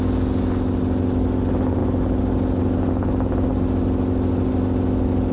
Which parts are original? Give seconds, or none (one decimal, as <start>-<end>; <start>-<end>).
0.0-5.3